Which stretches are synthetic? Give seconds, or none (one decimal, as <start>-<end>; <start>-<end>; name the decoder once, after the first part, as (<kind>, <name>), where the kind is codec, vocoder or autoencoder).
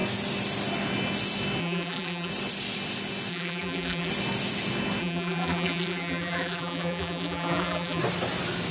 1.6-2.3 (vocoder, BigVGAN v2); 3.3-4.1; 5.0-8.0